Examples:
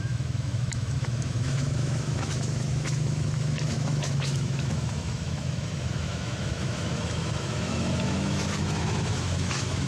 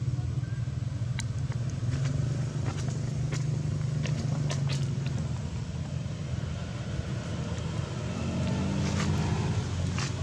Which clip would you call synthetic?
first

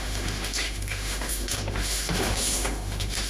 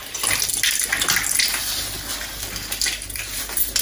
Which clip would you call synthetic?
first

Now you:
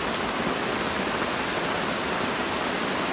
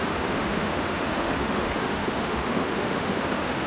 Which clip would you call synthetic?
second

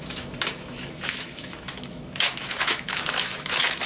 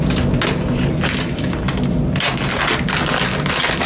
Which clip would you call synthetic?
first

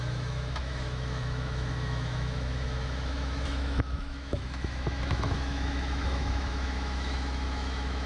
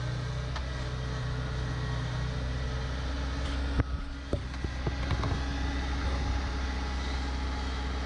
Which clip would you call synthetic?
first